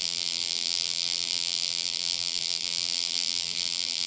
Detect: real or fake fake